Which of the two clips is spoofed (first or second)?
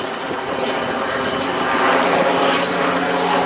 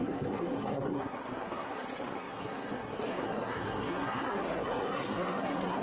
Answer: second